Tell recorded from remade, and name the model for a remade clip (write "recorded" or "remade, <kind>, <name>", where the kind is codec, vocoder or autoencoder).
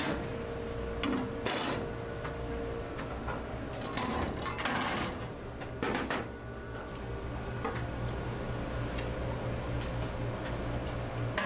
recorded